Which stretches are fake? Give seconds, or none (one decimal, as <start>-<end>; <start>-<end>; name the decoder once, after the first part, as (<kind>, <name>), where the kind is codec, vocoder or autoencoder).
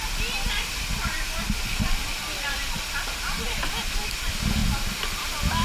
0.9-3.7 (vocoder, BigVGAN v2)